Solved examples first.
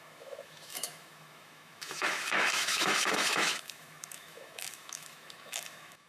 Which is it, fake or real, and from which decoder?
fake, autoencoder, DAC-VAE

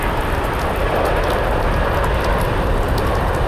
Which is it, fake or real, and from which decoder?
real